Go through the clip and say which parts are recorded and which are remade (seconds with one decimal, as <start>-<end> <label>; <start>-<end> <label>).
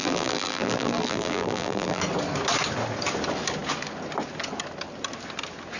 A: 0.0-2.0 remade; 2.0-5.8 recorded